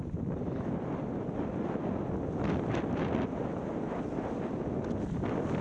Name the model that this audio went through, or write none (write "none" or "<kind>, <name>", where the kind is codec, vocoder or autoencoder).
none